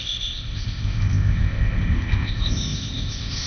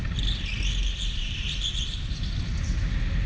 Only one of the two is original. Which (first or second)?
second